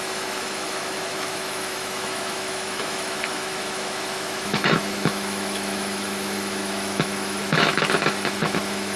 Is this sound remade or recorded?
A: remade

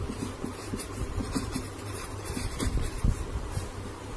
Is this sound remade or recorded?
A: remade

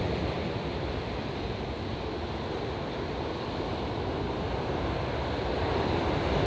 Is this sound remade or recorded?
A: recorded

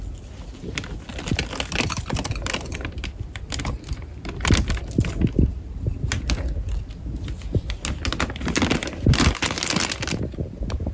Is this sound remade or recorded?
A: recorded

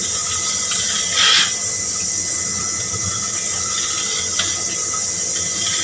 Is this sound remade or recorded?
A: recorded